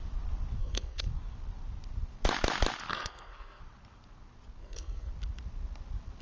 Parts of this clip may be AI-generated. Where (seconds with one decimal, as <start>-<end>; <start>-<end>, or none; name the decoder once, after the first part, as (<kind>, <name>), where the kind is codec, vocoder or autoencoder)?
0.6-1.1 (codec, SNAC); 2.9-3.6; 4.6-5.1